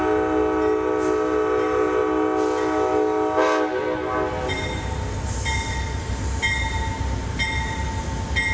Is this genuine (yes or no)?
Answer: yes